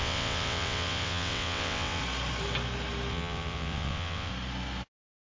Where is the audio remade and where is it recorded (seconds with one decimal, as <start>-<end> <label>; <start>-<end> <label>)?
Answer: 0.0-2.0 remade; 2.0-3.1 recorded; 3.1-4.3 remade; 4.3-5.3 recorded